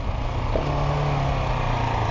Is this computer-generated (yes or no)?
no